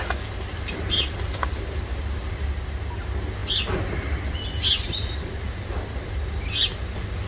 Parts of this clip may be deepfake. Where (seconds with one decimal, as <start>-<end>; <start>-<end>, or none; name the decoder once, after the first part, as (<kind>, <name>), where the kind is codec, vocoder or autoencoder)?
none